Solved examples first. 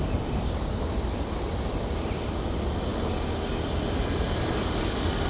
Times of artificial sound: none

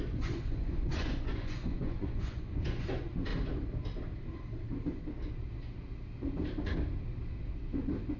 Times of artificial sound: 0.0-3.3

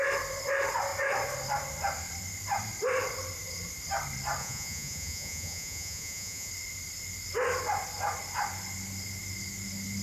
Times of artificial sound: 4.4-6.5

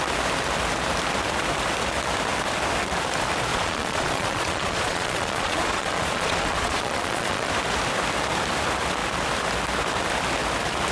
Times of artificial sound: 3.5-7.5

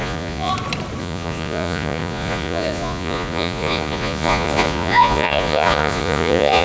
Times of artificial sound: 0.0-0.5; 1.0-6.6